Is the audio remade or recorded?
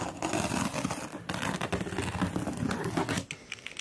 recorded